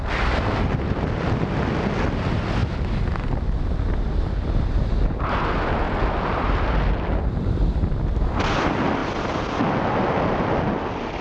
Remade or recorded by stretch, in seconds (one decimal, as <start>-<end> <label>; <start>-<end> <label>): 0.0-11.2 recorded